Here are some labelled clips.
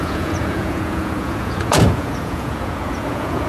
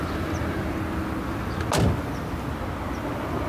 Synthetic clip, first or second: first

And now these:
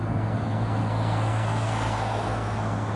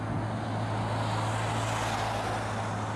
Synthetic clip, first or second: first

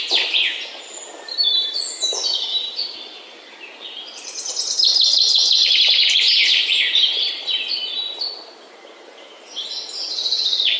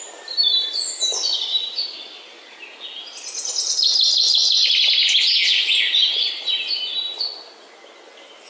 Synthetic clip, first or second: first